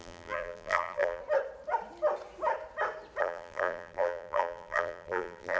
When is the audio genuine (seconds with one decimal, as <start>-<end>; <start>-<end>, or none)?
1.2-3.2